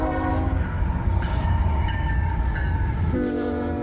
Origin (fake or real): fake